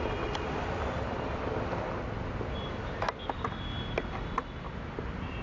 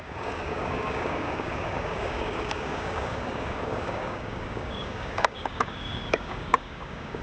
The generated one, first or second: second